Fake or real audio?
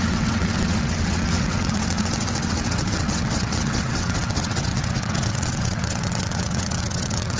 fake